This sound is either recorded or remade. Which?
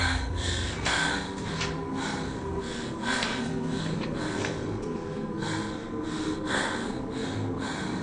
remade